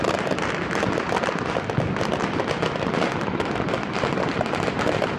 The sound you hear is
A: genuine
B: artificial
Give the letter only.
A